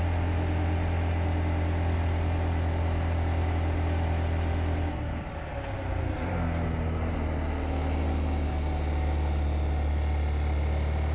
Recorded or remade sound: recorded